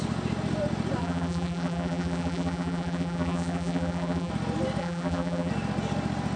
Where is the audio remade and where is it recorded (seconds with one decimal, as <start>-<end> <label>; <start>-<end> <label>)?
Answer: 0.0-1.0 recorded; 1.0-4.3 remade; 4.3-4.8 recorded; 4.8-5.5 remade; 5.5-6.4 recorded